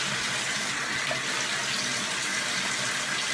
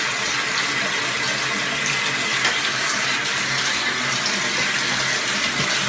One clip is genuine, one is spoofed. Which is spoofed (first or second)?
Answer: first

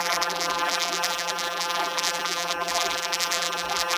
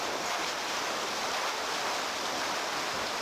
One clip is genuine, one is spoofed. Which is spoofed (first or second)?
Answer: first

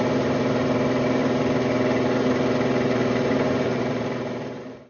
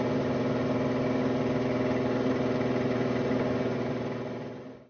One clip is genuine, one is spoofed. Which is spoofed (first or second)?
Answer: first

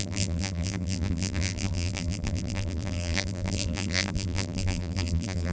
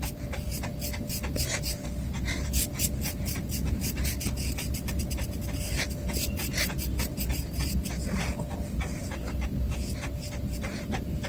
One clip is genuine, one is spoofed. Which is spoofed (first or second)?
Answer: first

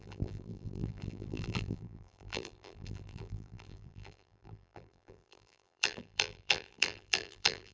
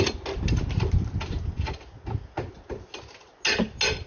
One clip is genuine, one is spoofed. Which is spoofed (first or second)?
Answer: first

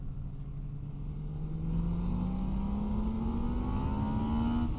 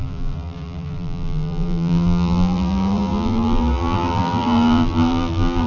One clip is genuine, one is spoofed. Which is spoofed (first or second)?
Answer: second